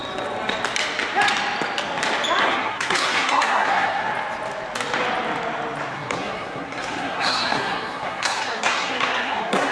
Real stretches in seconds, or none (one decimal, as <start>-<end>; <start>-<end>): 0.0-2.4; 4.1-5.9